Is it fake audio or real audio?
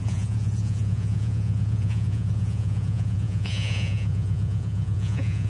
fake